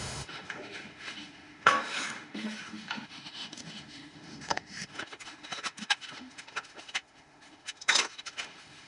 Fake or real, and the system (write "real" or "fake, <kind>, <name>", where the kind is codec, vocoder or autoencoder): fake, autoencoder, DAC-VAE